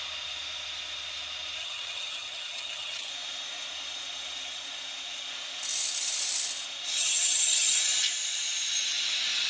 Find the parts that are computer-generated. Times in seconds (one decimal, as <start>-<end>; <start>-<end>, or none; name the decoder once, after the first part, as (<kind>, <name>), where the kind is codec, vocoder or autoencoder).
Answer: 1.6-3.1 (vocoder, HiFi-GAN); 7.0-7.8